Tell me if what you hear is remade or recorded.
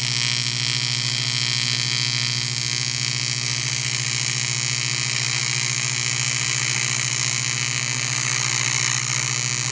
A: recorded